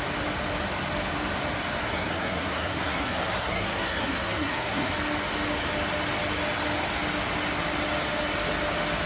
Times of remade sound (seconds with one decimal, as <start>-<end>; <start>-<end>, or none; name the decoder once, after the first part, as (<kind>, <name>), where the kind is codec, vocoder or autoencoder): 1.8-4.9 (codec, SNAC)